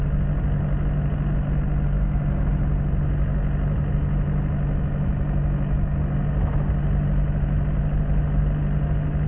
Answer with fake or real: real